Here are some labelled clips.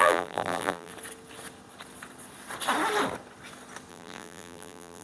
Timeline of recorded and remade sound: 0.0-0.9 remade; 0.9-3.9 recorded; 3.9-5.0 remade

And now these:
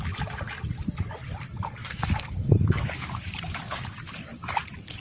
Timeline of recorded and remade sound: 0.0-1.8 recorded; 1.8-3.9 remade; 3.9-5.0 recorded

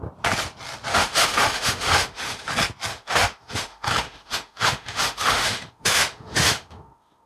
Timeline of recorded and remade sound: 0.0-0.9 recorded; 0.9-2.5 remade; 2.5-2.9 recorded; 2.9-7.3 remade

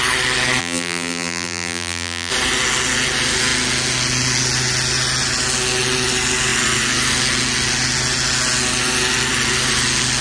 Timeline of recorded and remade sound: 0.0-0.6 recorded; 0.6-2.3 remade; 2.3-10.2 recorded